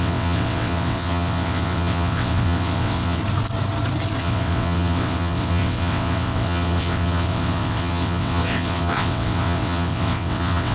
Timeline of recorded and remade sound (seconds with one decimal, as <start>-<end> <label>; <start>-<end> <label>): 0.0-3.2 remade; 3.2-4.2 recorded; 4.2-10.7 remade